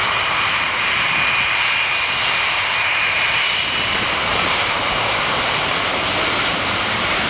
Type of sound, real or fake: fake